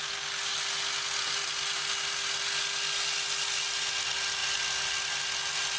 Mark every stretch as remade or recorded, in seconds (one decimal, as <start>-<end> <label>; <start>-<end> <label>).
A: 0.0-5.8 recorded